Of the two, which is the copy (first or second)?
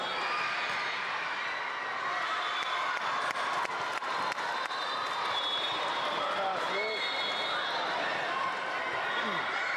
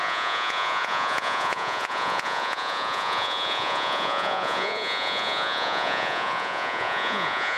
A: second